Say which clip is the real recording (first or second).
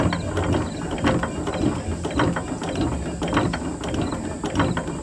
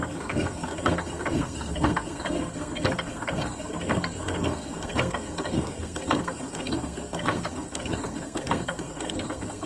first